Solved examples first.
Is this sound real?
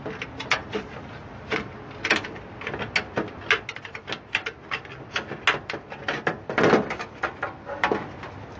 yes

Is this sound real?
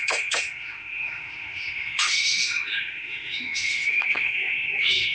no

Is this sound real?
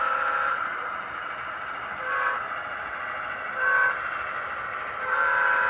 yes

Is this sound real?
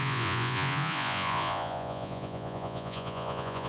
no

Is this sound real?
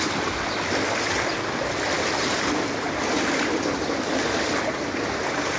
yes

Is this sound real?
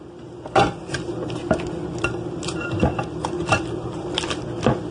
yes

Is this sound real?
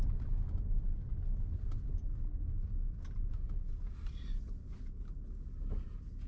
yes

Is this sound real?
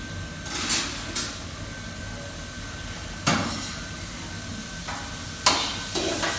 yes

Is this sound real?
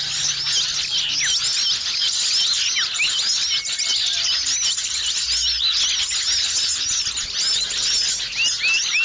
yes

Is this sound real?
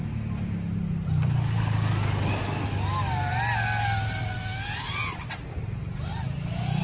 yes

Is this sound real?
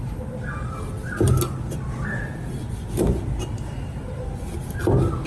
yes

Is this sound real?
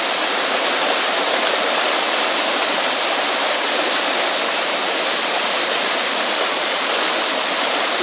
no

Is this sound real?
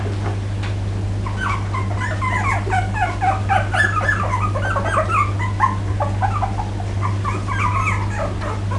yes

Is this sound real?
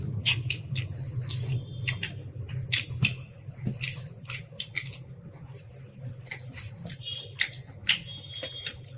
yes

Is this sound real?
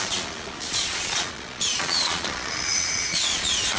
no